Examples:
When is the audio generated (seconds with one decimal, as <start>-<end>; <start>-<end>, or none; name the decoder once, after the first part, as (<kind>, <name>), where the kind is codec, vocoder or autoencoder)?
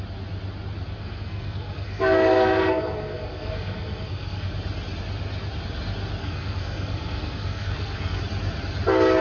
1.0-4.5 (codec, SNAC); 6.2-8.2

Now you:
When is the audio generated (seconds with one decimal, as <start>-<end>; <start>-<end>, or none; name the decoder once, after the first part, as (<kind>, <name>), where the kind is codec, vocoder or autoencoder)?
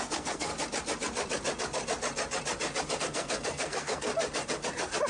0.0-0.5 (codec, SNAC); 3.0-4.1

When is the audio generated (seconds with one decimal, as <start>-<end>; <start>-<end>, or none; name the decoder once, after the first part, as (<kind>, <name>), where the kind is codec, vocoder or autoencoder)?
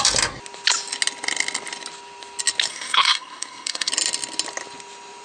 2.7-3.9 (codec, SNAC)